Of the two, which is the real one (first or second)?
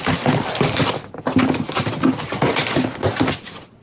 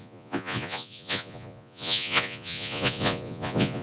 first